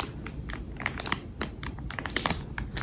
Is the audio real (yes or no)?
yes